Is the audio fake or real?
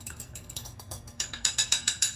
fake